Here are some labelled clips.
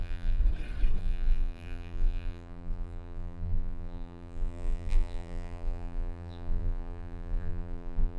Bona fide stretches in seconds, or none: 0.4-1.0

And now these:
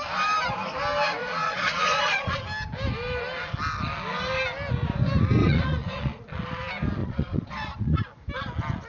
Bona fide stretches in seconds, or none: 0.0-1.2; 2.4-5.4; 6.2-7.0; 8.0-8.9

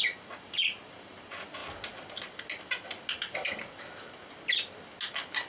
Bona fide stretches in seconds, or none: 0.0-5.5

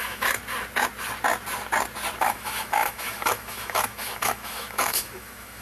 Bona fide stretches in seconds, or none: 0.4-2.2

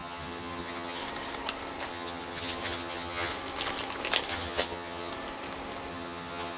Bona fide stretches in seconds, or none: 1.0-1.9; 3.3-4.3; 5.1-5.9

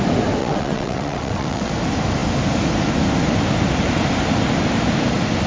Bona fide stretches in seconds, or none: 0.0-0.4; 1.7-5.5

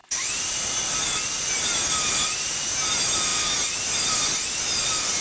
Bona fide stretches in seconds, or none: 0.0-5.2